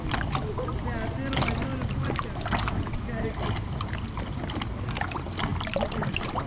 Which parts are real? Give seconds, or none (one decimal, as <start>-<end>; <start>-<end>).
0.0-6.5